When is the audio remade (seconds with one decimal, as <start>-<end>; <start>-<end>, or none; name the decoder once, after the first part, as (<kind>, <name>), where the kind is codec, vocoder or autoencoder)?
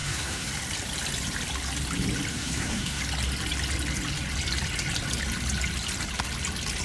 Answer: 0.0-0.5 (codec, SNAC); 2.3-3.0